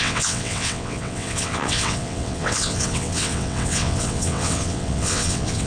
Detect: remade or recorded remade